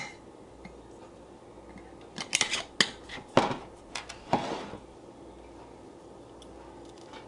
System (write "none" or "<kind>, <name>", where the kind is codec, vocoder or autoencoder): none